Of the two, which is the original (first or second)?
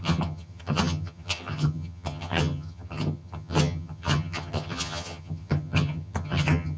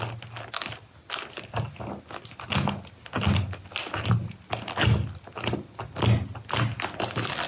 second